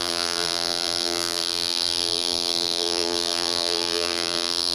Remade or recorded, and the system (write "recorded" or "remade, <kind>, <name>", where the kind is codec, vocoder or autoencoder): remade, vocoder, BigVGAN v2